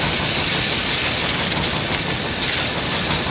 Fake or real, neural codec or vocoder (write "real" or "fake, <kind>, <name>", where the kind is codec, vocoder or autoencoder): real